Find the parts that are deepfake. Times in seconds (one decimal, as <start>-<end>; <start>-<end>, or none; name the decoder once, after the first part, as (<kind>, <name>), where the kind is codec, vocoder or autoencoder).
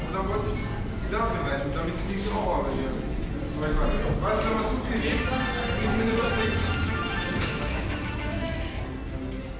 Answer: 2.8-3.3 (autoencoder, DAC-VAE); 6.6-8.8